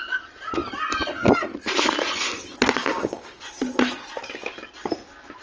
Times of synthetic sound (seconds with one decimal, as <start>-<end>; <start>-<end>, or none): 2.8-3.4